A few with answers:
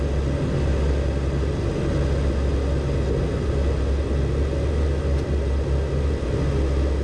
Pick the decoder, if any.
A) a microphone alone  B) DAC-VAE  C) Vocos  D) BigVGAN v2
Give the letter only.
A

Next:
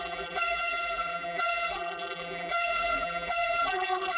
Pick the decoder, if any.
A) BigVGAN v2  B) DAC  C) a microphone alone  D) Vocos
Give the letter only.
A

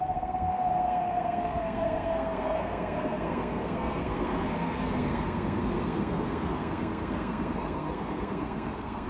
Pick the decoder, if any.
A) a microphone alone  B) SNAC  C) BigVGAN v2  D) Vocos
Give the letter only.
B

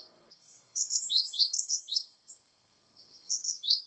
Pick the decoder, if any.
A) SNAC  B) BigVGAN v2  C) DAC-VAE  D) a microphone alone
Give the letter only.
A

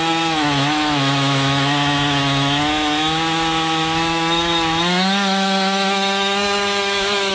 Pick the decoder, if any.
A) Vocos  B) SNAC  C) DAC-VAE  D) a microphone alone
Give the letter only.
C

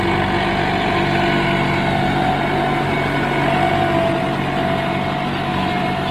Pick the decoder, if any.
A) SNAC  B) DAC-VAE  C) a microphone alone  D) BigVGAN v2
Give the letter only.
C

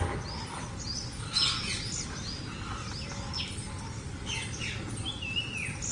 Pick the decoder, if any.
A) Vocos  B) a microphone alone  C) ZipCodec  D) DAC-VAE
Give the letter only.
B